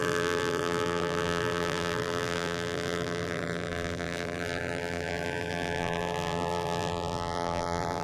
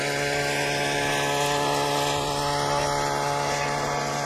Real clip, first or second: second